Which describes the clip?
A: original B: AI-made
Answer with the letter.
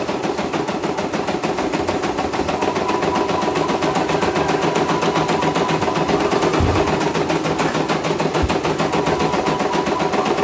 A